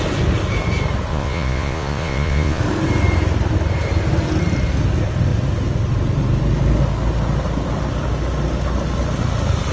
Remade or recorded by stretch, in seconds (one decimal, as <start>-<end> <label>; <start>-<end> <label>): 0.0-1.1 recorded; 1.1-2.6 remade; 2.6-9.7 recorded